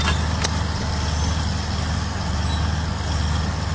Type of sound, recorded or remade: recorded